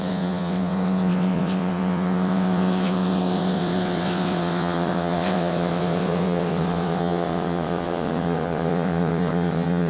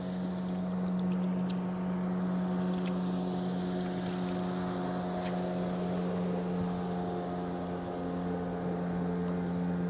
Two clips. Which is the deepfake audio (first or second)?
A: first